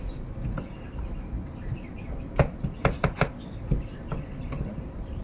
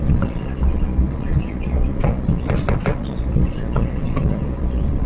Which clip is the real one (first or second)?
first